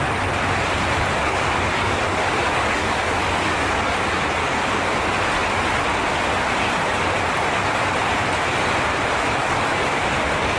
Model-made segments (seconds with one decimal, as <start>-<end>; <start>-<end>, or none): 1.2-4.2; 9.4-10.0